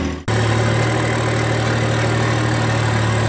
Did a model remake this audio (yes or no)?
no